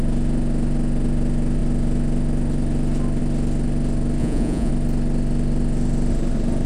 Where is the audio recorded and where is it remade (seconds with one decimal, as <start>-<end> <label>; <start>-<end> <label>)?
0.0-4.2 recorded; 4.2-4.7 remade; 4.7-6.7 recorded